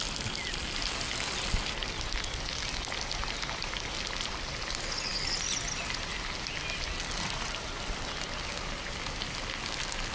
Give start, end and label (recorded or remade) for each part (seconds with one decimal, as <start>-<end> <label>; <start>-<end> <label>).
0.0-10.1 recorded